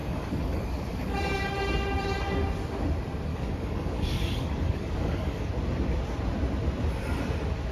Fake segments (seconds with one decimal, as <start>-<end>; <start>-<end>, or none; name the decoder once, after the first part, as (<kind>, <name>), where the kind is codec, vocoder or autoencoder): 0.0-1.5 (codec, DAC); 3.3-5.5